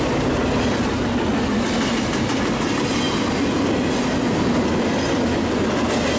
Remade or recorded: recorded